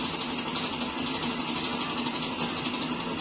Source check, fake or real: real